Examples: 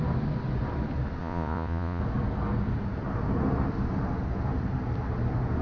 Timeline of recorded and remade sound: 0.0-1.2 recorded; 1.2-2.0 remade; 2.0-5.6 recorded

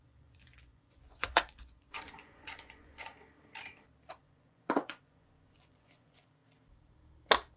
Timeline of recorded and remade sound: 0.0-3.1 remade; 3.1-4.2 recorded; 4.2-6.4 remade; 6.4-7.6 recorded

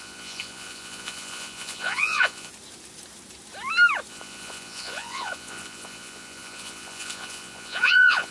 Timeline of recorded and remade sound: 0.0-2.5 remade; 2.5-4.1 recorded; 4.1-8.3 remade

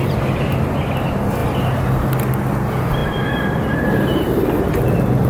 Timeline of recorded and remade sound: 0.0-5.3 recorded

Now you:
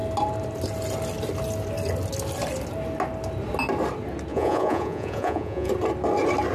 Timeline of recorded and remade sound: 0.0-4.3 recorded; 4.3-5.7 remade; 5.7-6.5 recorded